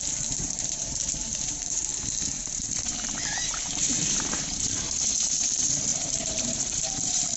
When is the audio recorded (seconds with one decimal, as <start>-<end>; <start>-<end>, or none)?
1.9-2.5